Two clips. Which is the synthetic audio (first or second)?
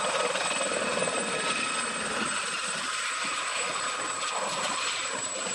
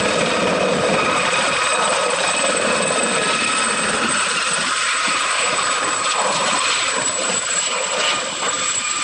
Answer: second